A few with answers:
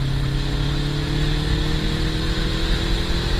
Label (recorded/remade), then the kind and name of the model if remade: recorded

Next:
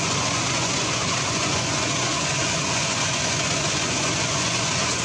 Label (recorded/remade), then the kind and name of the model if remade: remade, vocoder, Vocos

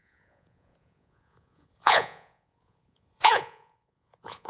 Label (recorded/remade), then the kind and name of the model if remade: remade, vocoder, Vocos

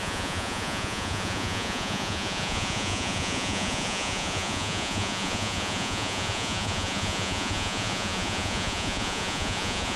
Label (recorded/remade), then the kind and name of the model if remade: remade, vocoder, Vocos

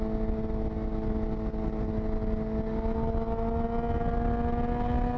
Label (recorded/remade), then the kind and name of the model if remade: recorded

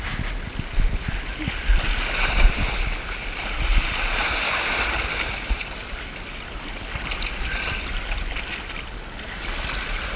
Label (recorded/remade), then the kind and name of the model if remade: recorded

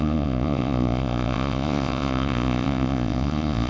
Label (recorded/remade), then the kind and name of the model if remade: remade, vocoder, Vocos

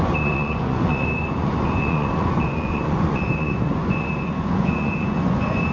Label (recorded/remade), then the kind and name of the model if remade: remade, vocoder, Vocos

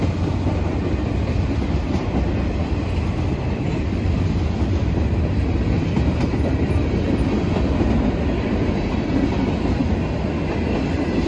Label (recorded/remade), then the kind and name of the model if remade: recorded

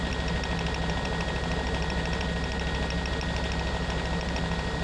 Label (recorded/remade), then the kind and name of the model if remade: recorded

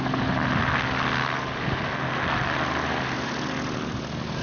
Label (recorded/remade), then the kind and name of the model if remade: recorded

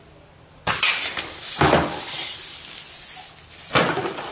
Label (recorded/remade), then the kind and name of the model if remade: recorded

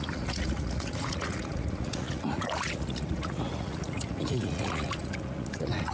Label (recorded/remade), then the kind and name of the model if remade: remade, vocoder, Vocos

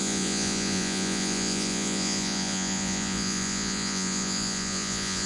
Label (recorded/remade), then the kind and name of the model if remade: remade, vocoder, Vocos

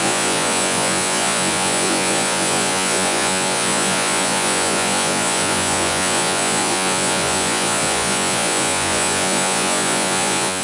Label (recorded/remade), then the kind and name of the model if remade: remade, vocoder, Vocos